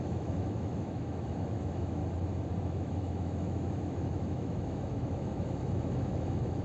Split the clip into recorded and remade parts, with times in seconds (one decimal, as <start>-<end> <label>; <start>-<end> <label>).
0.0-2.0 remade; 2.0-2.6 recorded; 2.6-6.6 remade